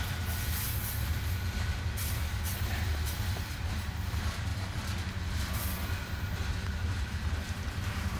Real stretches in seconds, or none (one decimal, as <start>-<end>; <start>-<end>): none